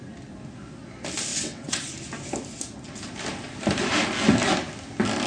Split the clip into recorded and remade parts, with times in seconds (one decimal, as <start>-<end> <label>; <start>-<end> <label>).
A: 0.0-1.3 recorded; 1.3-1.9 remade; 1.9-5.3 recorded